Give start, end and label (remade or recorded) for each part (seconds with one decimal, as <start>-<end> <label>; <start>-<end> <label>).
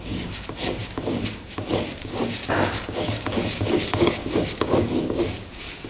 0.0-5.9 remade